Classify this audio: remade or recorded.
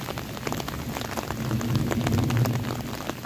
recorded